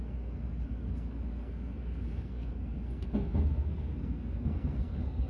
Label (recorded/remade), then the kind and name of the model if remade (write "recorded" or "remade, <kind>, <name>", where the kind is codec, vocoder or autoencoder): remade, codec, SNAC